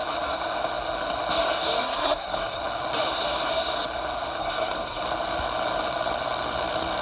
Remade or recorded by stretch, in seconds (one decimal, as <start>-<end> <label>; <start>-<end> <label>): 0.0-1.8 recorded; 1.8-2.6 remade; 2.6-4.4 recorded; 4.4-5.0 remade; 5.0-7.0 recorded